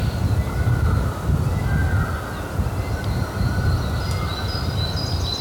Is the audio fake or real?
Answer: real